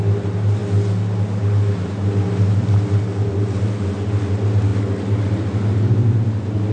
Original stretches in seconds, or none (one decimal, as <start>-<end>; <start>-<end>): 0.0-6.7